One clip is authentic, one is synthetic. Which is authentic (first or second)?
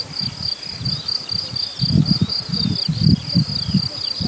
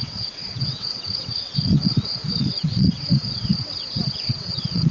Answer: first